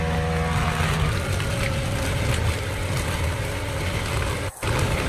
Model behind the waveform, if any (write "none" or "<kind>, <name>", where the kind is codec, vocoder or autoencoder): none